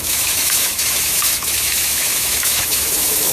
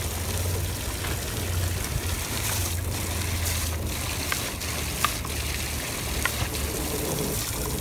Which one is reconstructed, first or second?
first